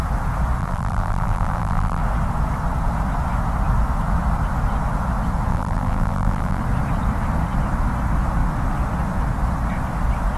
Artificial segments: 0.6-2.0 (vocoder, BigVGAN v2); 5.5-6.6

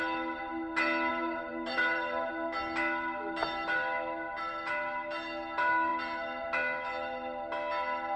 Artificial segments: 1.1-2.3 (vocoder, BigVGAN v2)

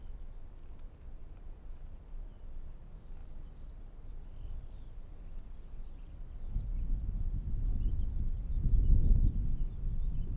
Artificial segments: none